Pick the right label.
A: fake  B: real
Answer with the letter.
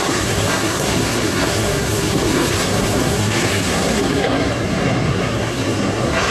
A